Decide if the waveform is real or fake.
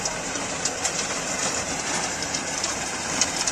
fake